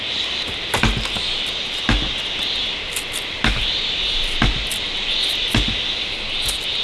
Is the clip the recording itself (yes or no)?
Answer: yes